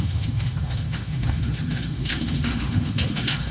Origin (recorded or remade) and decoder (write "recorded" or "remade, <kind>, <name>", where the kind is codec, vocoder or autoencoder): remade, autoencoder, DAC-VAE